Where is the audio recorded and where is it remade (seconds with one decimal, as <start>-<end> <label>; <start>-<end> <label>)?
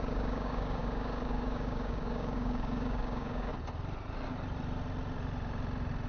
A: 0.0-3.5 remade; 3.5-6.1 recorded